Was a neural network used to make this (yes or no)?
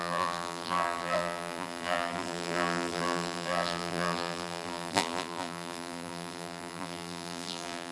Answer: yes